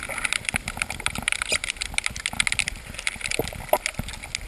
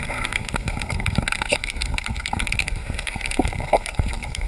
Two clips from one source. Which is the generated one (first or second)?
second